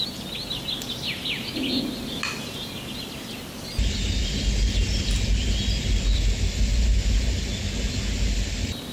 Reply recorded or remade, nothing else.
recorded